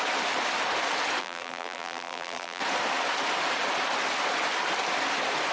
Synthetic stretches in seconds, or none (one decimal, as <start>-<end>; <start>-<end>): 1.2-2.6